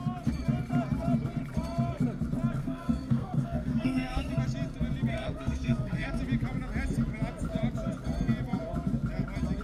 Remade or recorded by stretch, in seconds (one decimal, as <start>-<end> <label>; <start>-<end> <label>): 0.0-2.6 recorded; 2.6-4.3 remade; 4.3-5.1 recorded; 5.1-6.2 remade; 6.2-9.6 recorded